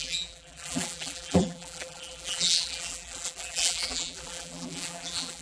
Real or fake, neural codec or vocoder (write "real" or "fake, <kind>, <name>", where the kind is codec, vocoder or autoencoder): fake, vocoder, BigVGAN v2